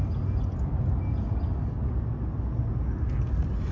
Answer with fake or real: real